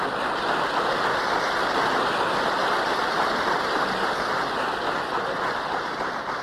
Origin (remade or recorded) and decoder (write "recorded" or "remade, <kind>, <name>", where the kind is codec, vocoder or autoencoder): recorded